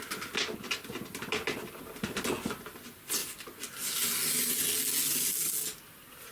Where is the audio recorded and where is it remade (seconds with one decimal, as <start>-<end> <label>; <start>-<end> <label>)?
0.0-6.3 recorded

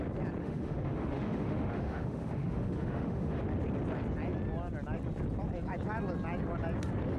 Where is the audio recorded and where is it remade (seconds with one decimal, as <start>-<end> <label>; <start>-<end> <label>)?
0.0-0.4 recorded; 0.4-3.4 remade; 3.4-7.2 recorded